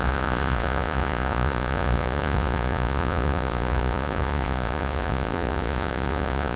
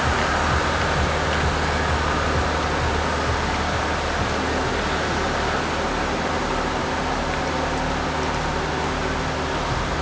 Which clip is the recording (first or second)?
second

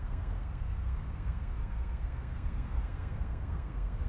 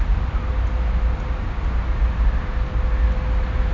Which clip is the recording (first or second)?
second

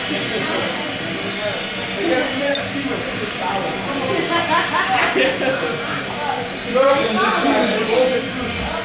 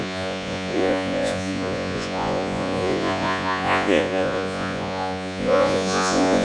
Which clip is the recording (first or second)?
first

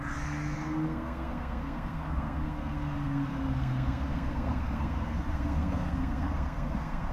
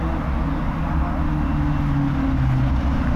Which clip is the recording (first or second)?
second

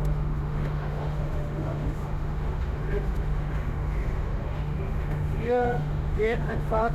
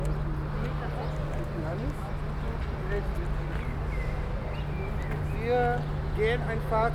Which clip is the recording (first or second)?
second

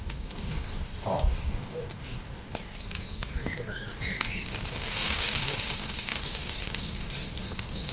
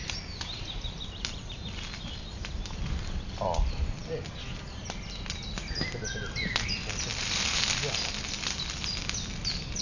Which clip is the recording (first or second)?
second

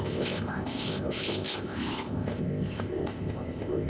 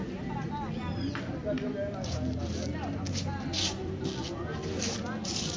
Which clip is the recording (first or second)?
second